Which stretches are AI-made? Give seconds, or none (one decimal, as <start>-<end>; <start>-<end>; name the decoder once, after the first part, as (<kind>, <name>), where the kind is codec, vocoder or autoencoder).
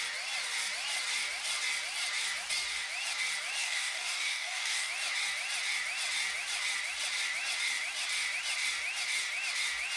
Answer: 3.6-4.9 (codec, DAC)